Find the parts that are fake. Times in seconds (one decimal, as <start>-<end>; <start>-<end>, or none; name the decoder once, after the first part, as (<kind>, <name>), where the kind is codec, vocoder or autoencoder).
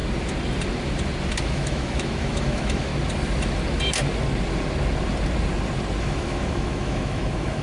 1.4-2.9 (autoencoder, DAC-VAE); 6.0-7.6